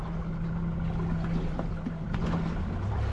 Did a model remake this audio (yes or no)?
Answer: no